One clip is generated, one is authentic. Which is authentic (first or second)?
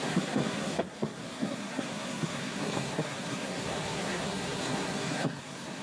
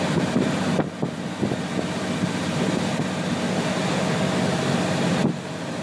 second